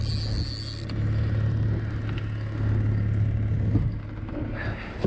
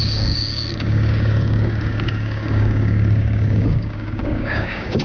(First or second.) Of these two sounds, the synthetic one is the second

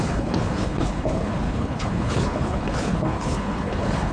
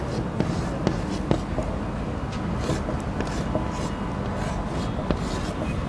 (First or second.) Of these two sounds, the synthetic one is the first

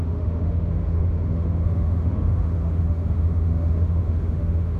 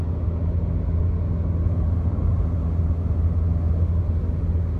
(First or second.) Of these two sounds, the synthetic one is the first